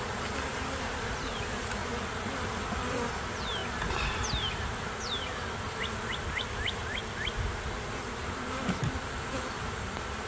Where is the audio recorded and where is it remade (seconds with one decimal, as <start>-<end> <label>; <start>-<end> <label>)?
0.0-0.5 recorded; 0.5-1.1 remade; 1.1-1.8 recorded; 1.8-3.1 remade; 3.1-10.3 recorded

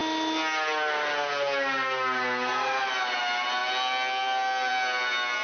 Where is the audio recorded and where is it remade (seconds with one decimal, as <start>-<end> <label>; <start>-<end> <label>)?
0.0-5.4 recorded

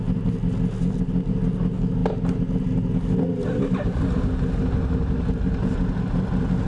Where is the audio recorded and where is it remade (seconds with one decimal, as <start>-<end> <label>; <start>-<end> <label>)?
0.0-6.7 recorded

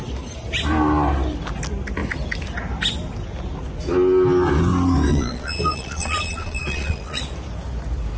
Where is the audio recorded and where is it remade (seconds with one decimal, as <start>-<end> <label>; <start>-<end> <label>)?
0.0-5.1 recorded; 5.1-7.2 remade; 7.2-8.2 recorded